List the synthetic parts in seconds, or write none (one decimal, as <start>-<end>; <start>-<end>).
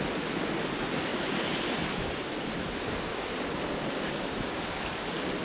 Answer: none